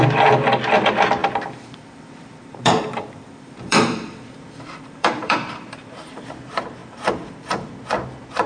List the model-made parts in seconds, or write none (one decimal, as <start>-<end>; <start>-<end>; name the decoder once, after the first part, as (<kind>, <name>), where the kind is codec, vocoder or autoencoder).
1.2-6.3 (vocoder, BigVGAN v2); 6.8-7.7